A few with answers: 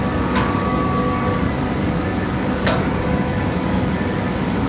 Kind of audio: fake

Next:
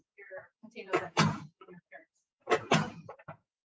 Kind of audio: fake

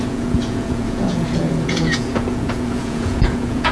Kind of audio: fake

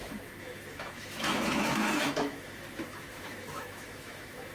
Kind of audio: fake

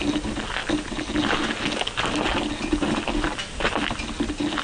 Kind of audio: real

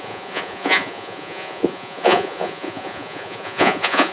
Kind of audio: fake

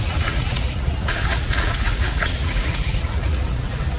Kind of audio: fake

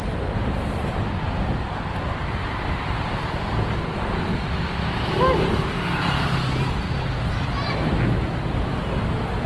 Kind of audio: real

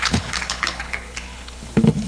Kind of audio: fake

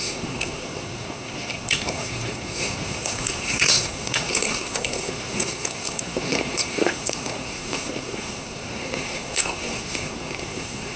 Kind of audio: fake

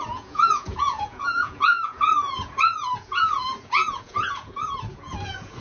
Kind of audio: fake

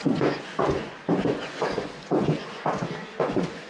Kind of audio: fake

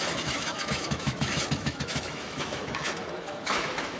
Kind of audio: fake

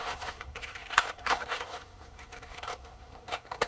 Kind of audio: fake